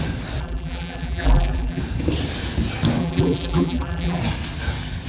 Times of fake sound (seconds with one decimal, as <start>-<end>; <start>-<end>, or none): 0.4-1.8; 3.0-4.2